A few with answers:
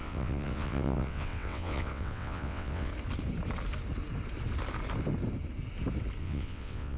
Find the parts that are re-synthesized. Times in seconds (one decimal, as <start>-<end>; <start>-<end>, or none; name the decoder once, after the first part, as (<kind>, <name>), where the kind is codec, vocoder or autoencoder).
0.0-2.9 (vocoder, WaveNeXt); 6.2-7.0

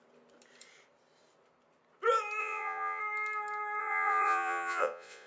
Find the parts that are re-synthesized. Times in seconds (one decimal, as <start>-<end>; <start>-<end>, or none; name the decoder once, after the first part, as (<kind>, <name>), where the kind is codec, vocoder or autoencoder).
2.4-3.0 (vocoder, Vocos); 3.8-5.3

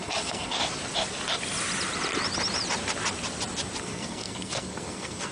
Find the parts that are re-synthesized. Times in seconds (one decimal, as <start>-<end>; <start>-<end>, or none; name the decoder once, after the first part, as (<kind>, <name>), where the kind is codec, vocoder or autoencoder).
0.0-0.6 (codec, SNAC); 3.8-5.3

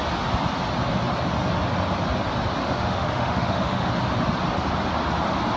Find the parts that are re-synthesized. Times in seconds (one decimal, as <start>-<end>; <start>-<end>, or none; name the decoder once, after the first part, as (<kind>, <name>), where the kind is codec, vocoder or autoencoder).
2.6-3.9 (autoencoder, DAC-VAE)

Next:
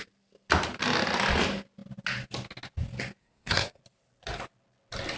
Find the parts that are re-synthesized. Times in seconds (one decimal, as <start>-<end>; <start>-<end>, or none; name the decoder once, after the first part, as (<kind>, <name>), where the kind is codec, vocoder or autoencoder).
3.2-3.8 (codec, SNAC)

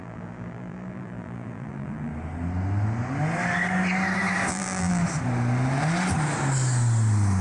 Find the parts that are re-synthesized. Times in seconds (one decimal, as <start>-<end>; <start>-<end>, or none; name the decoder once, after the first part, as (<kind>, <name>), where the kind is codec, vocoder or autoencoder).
0.0-2.1 (vocoder, BigVGAN v2); 4.5-5.0

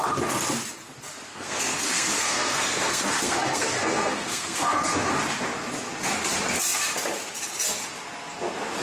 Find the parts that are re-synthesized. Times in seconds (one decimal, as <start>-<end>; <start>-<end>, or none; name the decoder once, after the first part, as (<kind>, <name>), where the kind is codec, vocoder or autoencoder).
1.3-5.1 (codec, SNAC)

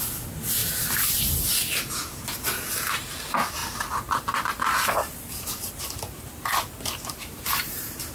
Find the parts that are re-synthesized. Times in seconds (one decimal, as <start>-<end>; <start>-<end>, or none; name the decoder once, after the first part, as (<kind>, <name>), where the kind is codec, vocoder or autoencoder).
0.6-1.1 (vocoder, BigVGAN v2); 3.6-5.7